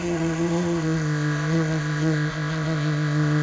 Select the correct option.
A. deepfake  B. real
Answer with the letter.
A